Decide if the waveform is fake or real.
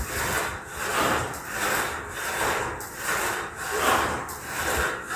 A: real